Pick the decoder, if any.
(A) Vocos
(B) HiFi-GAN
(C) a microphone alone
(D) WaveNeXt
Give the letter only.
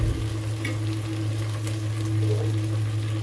C